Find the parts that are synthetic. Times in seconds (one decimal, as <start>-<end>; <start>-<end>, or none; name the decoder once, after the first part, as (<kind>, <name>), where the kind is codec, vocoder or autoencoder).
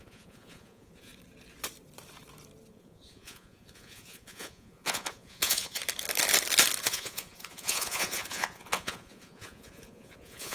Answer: 0.0-1.1 (vocoder, Vocos); 2.7-5.8; 6.8-10.5